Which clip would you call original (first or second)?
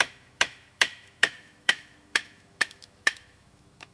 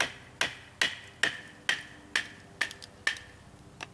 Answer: second